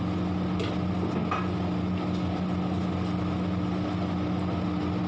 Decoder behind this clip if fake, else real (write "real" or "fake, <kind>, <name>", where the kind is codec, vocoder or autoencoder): real